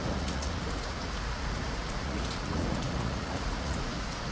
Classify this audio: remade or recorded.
remade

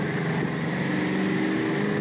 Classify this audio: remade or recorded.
recorded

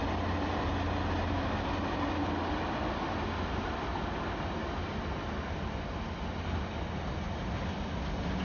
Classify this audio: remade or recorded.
recorded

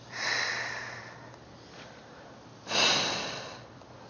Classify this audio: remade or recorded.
recorded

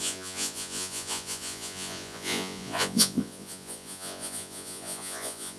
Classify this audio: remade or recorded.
remade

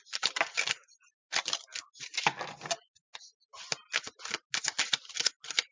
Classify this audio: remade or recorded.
recorded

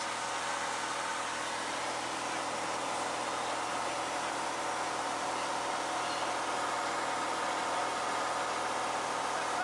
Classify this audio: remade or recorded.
recorded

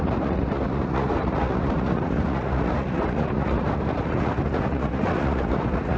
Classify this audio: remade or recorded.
remade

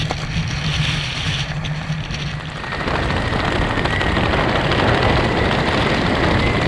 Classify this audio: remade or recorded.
recorded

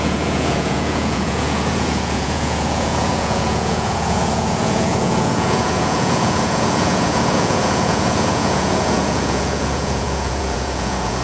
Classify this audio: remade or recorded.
remade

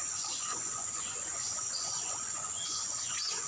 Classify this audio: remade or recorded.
remade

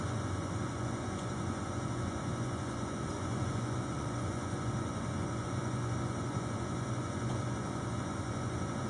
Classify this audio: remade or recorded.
remade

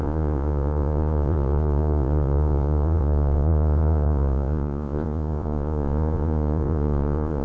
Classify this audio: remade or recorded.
remade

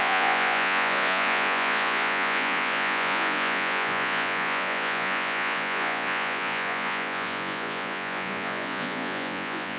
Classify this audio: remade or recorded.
remade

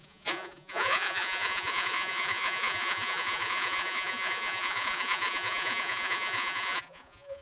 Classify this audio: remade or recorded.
remade